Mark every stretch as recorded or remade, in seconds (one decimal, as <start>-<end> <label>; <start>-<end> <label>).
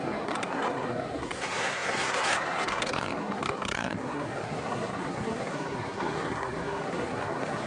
0.0-7.7 remade